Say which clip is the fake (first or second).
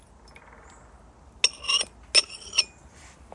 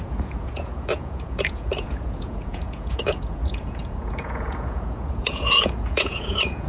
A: second